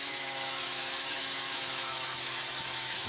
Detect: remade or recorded remade